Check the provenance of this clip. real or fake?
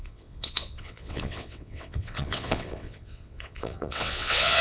fake